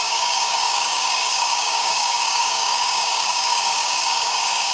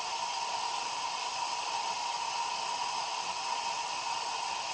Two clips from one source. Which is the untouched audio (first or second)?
second